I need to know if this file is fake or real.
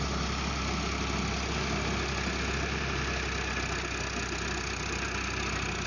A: real